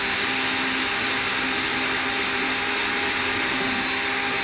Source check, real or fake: real